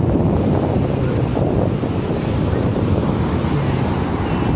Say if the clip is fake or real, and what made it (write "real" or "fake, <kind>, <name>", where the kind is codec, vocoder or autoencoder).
real